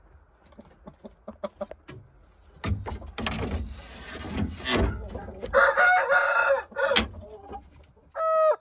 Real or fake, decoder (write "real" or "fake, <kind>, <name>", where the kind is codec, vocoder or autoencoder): real